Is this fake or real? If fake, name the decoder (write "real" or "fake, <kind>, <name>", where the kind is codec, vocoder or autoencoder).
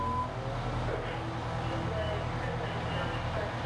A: real